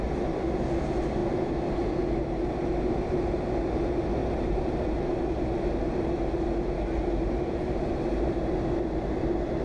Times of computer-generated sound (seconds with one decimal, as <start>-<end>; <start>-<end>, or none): 4.2-5.2